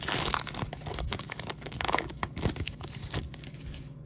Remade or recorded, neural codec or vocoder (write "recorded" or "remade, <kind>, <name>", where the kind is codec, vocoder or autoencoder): remade, codec, DAC